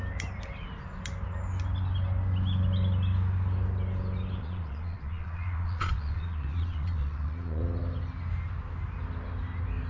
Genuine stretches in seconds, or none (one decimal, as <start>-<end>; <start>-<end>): 0.0-4.4; 7.6-9.9